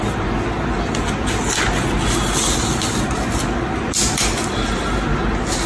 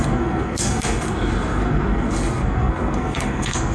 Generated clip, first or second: second